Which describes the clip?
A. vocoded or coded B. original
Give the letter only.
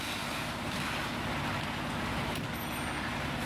B